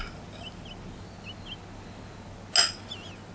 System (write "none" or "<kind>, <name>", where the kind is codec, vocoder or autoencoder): none